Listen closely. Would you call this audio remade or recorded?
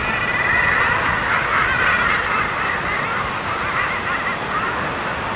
recorded